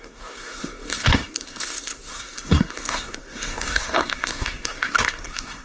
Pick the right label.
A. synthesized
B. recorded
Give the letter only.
A